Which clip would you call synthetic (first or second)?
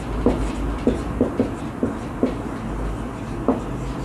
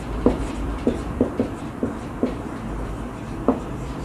second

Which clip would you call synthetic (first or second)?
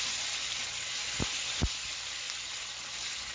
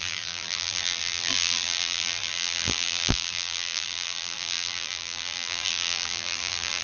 second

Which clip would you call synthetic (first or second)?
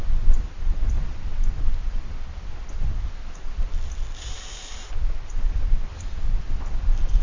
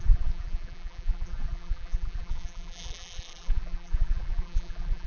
second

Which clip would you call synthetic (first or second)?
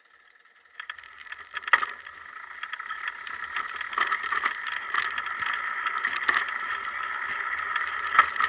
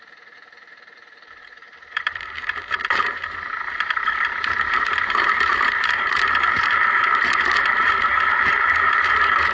second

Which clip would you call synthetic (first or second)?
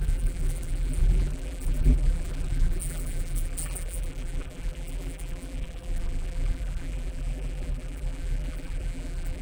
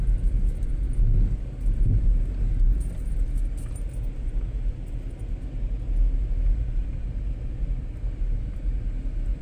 first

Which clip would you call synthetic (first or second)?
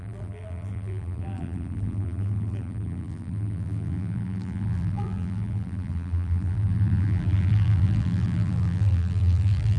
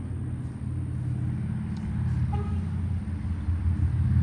first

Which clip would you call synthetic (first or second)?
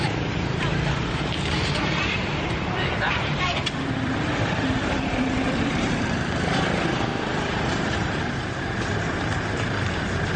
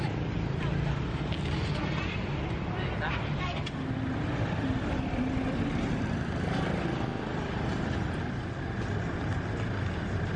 first